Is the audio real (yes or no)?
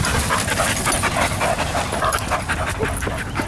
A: yes